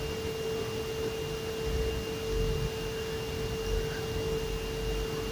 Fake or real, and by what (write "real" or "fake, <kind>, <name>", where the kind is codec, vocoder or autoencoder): real